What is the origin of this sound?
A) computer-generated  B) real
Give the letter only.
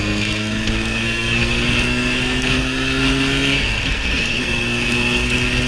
A